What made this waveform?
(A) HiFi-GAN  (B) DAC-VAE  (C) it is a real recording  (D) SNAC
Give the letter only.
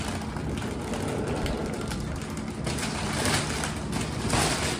C